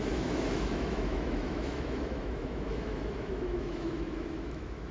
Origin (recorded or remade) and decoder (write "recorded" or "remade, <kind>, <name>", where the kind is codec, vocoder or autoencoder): remade, autoencoder, DAC-VAE